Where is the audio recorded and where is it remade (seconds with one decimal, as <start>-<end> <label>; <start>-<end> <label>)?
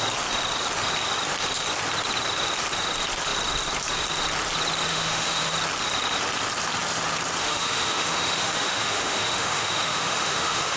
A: 0.0-4.9 recorded; 4.9-5.5 remade; 5.5-7.4 recorded; 7.4-10.8 remade